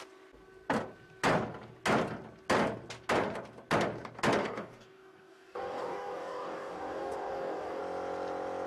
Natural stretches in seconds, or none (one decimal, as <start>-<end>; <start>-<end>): 0.0-4.4; 7.8-8.7